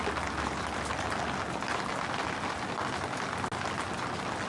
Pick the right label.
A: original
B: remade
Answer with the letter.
A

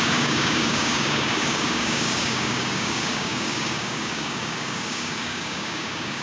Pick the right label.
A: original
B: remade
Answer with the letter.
B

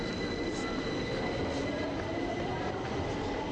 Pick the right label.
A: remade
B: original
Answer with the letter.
B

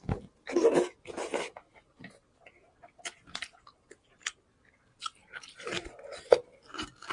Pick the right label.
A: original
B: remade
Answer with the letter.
A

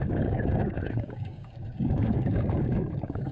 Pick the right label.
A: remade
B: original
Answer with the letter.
A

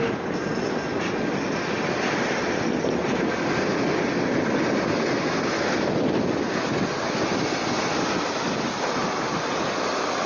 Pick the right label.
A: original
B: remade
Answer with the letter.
A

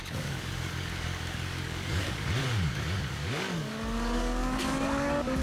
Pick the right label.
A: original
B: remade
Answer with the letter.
B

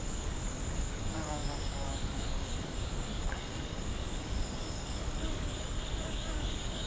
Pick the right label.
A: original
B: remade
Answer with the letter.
B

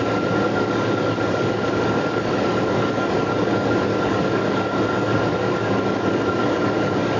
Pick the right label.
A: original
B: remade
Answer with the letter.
B